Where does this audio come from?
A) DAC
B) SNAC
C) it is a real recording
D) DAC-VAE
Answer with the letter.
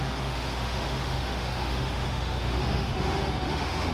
D